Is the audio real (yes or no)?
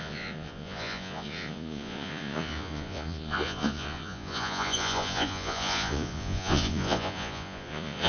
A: no